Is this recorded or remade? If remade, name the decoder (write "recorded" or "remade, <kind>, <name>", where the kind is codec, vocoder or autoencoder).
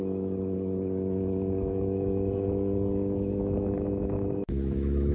remade, autoencoder, DAC-VAE